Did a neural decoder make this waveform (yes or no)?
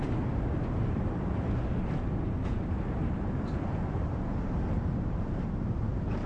yes